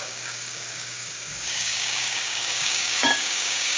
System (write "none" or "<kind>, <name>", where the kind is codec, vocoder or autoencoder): codec, DAC